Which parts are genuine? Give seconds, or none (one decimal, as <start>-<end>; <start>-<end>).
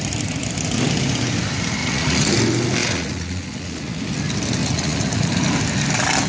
0.0-1.8; 2.3-2.8; 4.0-4.6; 5.3-6.3